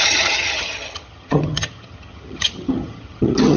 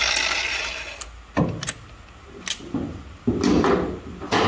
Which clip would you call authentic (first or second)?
second